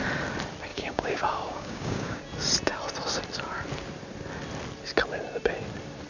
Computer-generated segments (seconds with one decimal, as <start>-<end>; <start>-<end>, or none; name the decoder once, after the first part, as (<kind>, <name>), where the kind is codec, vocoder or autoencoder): 0.7-2.2 (codec, DAC)

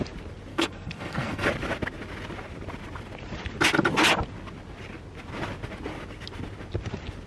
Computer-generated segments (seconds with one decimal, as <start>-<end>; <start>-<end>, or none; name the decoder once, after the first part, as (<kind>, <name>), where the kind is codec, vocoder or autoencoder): 0.5-1.5 (codec, SNAC)

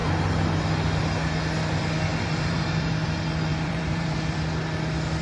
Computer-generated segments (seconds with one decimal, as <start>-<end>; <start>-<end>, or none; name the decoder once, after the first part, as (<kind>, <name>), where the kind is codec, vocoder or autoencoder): 2.1-2.9 (vocoder, BigVGAN v2); 3.5-4.4